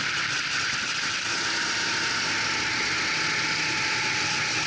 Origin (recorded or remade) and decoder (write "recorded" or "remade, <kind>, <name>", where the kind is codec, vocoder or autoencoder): recorded